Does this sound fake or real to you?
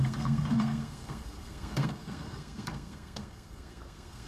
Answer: fake